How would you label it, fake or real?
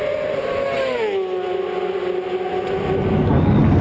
real